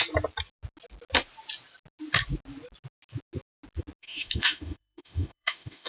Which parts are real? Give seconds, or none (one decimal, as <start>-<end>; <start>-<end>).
0.0-4.0